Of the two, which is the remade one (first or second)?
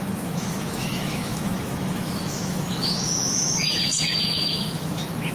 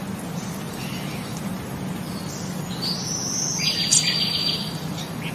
first